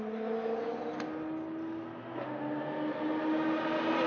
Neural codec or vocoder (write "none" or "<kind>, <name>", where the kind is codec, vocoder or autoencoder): none